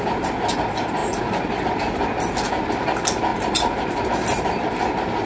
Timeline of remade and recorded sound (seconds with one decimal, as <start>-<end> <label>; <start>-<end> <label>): 0.0-5.3 recorded